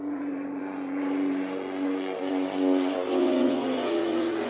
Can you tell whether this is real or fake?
fake